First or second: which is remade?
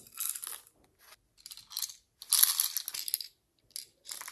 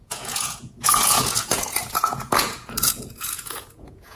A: second